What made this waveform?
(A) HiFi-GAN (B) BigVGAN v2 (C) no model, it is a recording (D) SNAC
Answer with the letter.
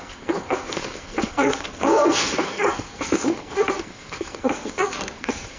D